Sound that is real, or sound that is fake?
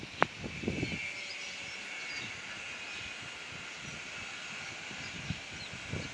real